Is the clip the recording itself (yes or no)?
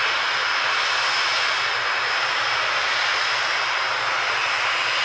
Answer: yes